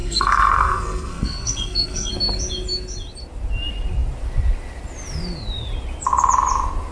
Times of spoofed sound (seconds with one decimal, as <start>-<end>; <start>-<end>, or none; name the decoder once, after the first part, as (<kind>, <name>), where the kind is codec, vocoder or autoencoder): 0.0-2.1 (codec, SNAC)